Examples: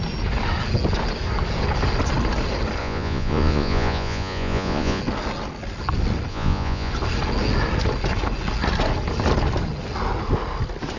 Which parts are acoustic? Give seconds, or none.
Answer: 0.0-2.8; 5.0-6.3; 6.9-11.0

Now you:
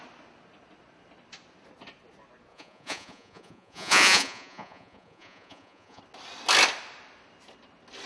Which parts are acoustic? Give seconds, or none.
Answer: 0.0-2.5; 6.0-8.1

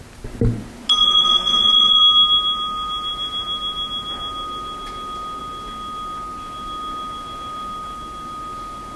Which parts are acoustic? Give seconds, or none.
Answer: 0.0-1.0; 2.0-9.0

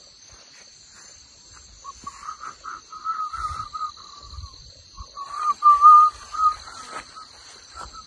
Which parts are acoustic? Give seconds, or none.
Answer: 0.0-8.1

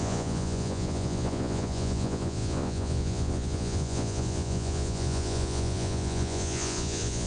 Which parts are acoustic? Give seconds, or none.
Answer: none